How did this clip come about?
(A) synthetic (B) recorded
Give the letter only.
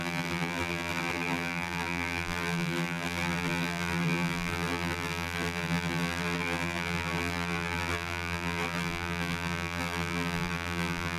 A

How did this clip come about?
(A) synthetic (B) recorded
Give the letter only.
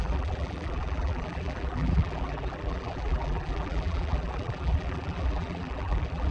A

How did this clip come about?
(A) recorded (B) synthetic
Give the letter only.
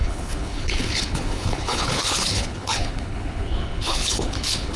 B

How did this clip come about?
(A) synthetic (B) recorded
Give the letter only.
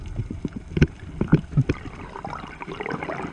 B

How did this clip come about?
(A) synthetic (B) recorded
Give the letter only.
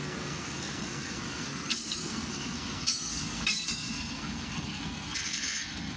A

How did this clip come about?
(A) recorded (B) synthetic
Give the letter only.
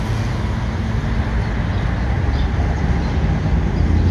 A